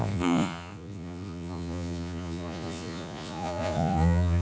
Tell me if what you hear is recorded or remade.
remade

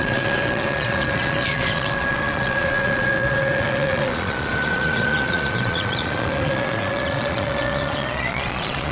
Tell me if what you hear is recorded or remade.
remade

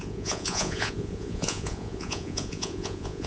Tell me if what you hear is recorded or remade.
remade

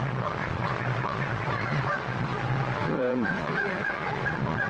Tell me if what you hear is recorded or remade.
remade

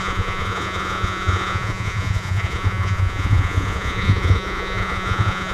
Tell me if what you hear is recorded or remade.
remade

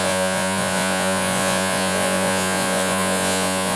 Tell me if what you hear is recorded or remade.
remade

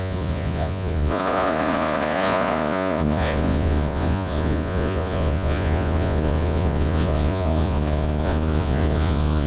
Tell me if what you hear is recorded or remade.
remade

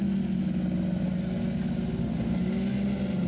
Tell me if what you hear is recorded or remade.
recorded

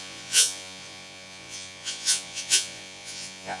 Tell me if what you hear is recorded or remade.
remade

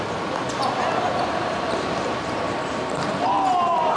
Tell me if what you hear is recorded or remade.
recorded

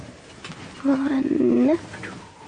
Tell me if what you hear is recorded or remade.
recorded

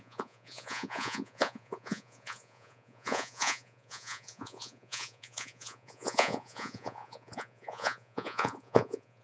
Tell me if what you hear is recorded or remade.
remade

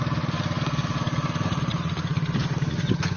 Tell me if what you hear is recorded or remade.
recorded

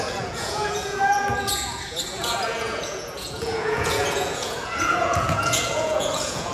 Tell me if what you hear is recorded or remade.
remade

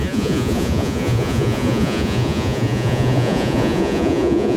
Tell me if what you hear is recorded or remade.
remade